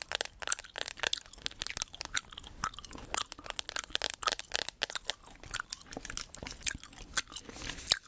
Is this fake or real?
real